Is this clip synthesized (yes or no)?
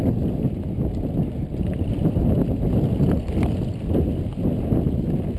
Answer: no